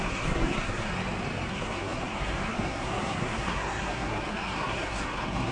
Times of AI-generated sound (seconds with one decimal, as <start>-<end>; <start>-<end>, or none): 0.0-0.9; 1.5-5.5